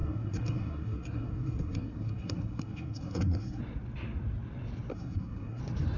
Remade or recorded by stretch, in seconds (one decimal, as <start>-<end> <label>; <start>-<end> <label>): 0.0-3.6 remade; 3.6-4.9 recorded; 4.9-5.6 remade; 5.6-6.0 recorded

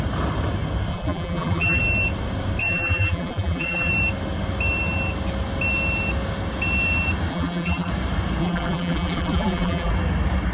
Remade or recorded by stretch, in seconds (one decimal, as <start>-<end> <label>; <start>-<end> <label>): 0.0-0.9 recorded; 0.9-1.8 remade; 1.8-2.6 recorded; 2.6-3.9 remade; 3.9-7.3 recorded; 7.3-7.9 remade; 7.9-8.4 recorded; 8.4-9.9 remade; 9.9-10.5 recorded